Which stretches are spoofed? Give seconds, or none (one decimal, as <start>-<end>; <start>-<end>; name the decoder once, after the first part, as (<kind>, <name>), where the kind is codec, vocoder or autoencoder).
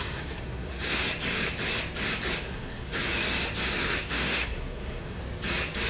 0.0-1.0 (codec, SNAC); 2.4-3.0; 4.1-5.2